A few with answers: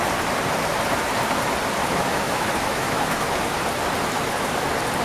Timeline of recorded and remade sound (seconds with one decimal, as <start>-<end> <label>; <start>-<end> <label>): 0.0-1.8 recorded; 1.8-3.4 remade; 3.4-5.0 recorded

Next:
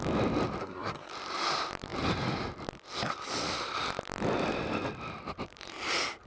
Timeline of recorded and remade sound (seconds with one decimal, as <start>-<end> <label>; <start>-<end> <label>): 0.0-0.6 recorded; 0.6-1.1 remade; 1.1-6.3 recorded

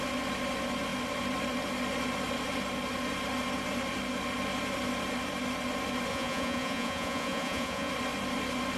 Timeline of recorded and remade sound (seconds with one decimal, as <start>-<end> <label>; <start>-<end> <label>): 0.0-6.1 recorded; 6.1-7.9 remade; 7.9-8.8 recorded

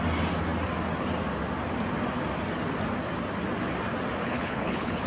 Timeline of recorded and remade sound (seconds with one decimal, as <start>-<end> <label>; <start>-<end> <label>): 0.0-4.2 recorded; 4.2-5.1 remade

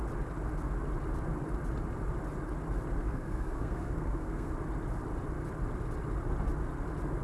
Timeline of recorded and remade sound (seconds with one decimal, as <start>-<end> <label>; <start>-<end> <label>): 0.0-3.0 recorded; 3.0-4.5 remade; 4.5-7.2 recorded